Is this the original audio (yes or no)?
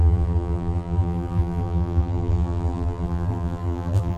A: no